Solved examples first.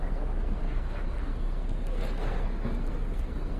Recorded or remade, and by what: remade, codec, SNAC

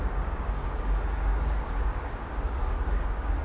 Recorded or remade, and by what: remade, codec, DAC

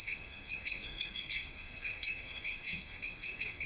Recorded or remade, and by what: remade, codec, SNAC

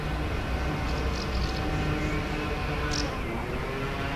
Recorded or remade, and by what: recorded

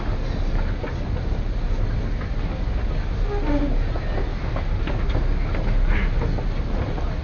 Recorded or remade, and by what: recorded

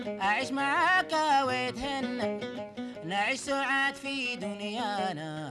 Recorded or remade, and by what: recorded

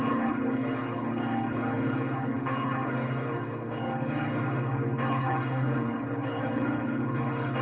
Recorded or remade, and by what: remade, codec, HILCodec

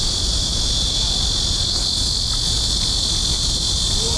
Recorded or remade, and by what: recorded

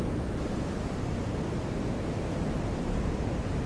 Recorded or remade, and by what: recorded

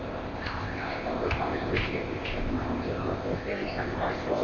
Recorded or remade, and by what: remade, codec, ZipCodec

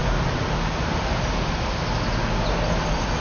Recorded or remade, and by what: recorded